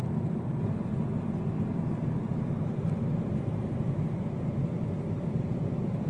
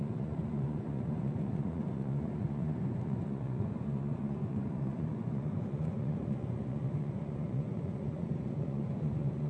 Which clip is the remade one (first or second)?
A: second